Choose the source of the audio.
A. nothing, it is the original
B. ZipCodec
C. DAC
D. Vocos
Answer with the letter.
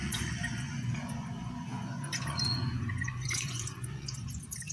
D